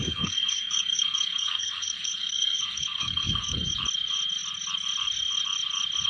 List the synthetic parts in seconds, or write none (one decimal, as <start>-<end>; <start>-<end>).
0.0-3.7

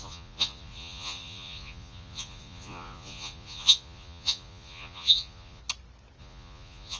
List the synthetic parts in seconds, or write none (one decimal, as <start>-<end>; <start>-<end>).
0.0-5.6; 6.2-7.0

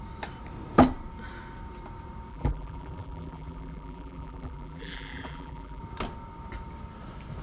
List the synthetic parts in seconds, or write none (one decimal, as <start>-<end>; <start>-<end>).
2.3-5.8

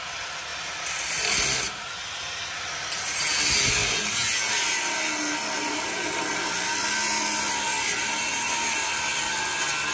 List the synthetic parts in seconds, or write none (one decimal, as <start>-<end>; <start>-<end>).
none

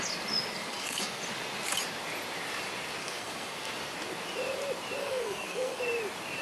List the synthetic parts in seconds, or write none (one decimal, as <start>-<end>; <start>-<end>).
0.6-1.2; 3.0-3.7; 5.0-5.8

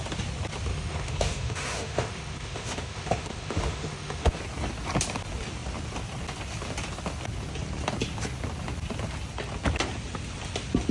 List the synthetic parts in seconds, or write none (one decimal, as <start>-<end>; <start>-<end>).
0.7-4.4